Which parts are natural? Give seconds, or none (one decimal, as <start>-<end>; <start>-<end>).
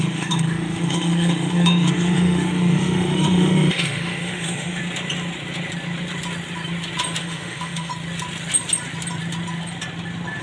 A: 4.8-7.2; 7.9-10.4